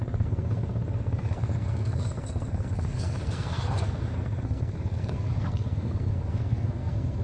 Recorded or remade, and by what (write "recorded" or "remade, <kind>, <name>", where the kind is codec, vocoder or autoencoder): remade, codec, SNAC